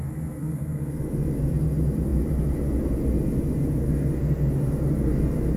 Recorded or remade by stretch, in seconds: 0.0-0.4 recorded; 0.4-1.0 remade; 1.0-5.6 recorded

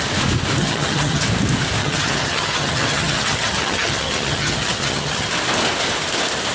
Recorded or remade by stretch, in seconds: 0.0-0.6 recorded; 0.6-1.2 remade; 1.2-1.8 recorded; 1.8-5.3 remade; 5.3-6.5 recorded

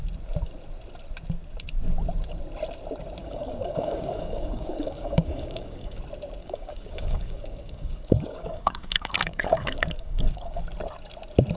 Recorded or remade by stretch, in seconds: 0.0-3.2 recorded; 3.2-6.0 remade; 6.0-6.4 recorded; 6.4-10.6 remade; 10.6-11.6 recorded

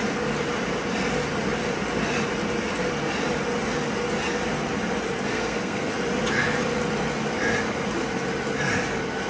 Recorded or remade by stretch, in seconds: 0.0-5.3 recorded; 5.3-5.9 remade; 5.9-9.3 recorded

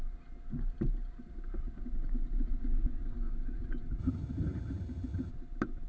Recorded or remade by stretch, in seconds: 0.0-4.0 recorded; 4.0-5.3 remade; 5.3-5.9 recorded

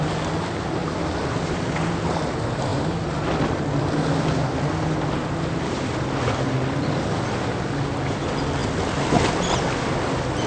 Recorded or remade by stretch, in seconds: 0.0-10.5 recorded